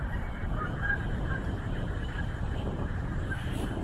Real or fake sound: fake